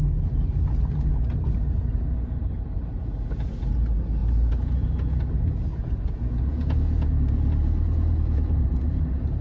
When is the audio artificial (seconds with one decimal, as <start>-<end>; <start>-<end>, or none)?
1.8-2.4; 4.2-9.4